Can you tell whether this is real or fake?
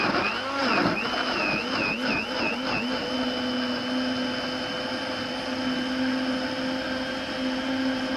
real